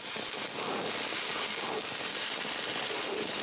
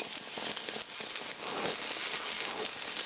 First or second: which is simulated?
first